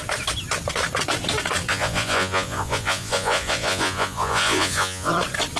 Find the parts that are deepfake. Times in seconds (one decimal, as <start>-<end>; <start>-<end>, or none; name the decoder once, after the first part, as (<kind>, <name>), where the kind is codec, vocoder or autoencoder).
1.7-5.1 (vocoder, Vocos)